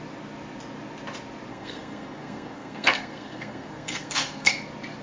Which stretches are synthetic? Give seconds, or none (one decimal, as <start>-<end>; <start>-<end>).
1.5-4.5